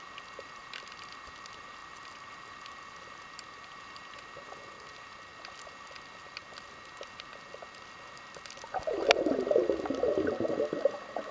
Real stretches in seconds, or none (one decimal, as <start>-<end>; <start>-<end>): 0.0-11.3